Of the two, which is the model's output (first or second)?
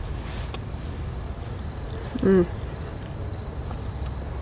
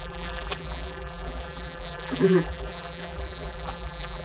second